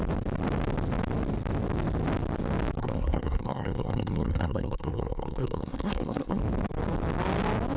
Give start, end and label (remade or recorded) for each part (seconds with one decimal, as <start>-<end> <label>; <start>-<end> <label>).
0.0-2.8 recorded; 2.8-6.4 remade; 6.4-7.8 recorded